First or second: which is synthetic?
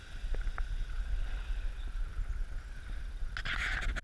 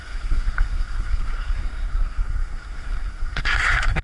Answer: second